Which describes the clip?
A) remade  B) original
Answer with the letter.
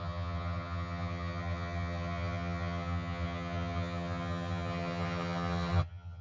A